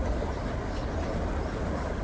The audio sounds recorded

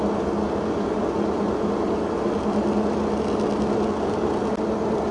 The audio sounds recorded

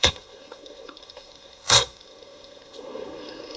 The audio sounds remade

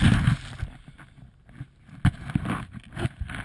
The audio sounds recorded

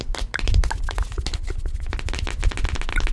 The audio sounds recorded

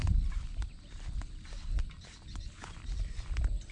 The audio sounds recorded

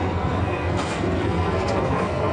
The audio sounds remade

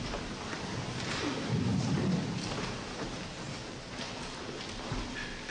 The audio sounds recorded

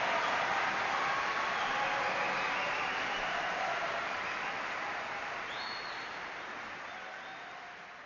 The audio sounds recorded